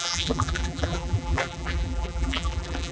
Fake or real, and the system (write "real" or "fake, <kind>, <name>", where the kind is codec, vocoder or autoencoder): fake, vocoder, BigVGAN v2